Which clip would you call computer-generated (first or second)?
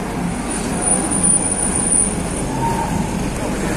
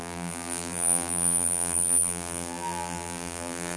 second